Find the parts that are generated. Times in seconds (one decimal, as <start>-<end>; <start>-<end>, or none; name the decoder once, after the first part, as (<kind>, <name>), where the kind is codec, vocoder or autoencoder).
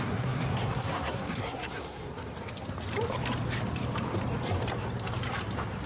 0.0-2.1 (codec, SNAC)